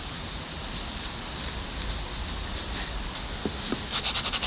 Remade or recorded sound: recorded